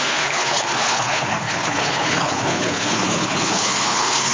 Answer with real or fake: fake